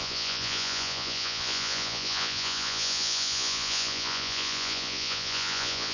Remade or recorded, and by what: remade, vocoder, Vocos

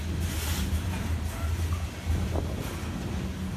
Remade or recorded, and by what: recorded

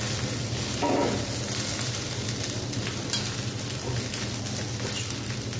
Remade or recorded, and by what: recorded